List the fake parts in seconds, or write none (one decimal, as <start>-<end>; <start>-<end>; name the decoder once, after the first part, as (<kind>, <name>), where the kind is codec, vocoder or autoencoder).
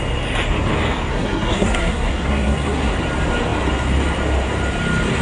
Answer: 1.1-2.9 (codec, SNAC)